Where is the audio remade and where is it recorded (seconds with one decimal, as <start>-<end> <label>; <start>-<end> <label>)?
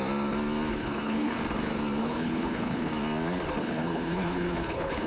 0.0-0.7 recorded; 0.7-1.4 remade; 1.4-2.0 recorded; 2.0-2.9 remade; 2.9-3.6 recorded; 3.6-5.1 remade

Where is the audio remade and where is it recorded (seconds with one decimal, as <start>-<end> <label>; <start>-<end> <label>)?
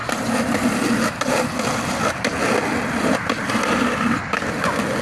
0.0-5.0 recorded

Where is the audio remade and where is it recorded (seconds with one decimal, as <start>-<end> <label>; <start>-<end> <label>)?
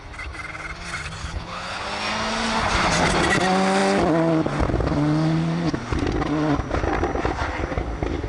0.0-1.2 recorded; 1.2-1.8 remade; 1.8-8.3 recorded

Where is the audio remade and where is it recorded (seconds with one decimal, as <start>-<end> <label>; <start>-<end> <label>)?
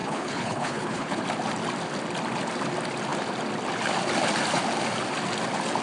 0.0-1.2 remade; 1.2-5.8 recorded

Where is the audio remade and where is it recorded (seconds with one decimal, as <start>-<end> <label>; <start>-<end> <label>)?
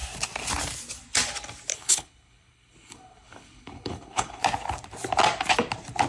0.0-1.7 recorded; 1.7-4.4 remade; 4.4-6.1 recorded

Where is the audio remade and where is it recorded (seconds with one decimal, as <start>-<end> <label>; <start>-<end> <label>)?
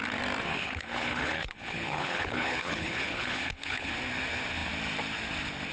0.0-0.5 recorded; 0.5-3.9 remade; 3.9-5.7 recorded